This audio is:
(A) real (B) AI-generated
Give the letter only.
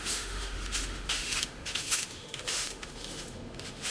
B